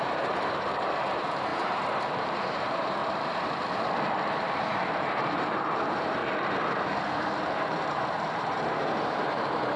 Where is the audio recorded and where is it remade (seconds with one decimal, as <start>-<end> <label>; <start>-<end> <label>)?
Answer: 0.0-3.0 remade; 3.0-4.9 recorded; 4.9-6.2 remade; 6.2-7.1 recorded; 7.1-9.8 remade